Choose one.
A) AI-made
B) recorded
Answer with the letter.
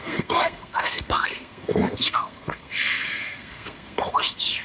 A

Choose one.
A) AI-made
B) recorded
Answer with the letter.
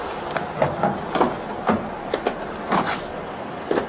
B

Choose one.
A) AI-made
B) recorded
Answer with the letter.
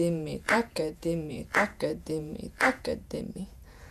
A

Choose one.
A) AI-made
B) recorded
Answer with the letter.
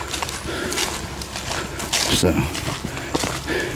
B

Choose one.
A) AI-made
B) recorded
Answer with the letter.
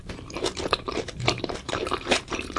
A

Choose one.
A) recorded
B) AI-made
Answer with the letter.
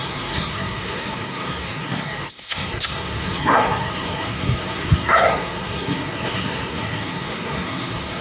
B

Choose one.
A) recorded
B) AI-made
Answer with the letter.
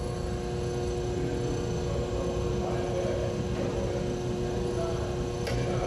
A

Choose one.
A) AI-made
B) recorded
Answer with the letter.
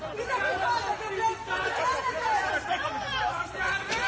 B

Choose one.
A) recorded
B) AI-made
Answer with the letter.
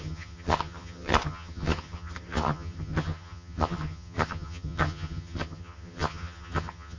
B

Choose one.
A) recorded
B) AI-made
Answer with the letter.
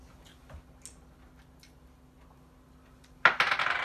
A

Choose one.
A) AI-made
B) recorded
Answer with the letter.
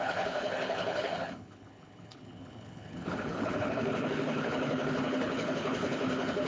A